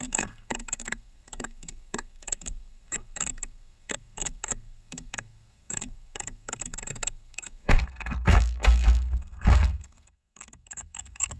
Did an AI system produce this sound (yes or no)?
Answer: yes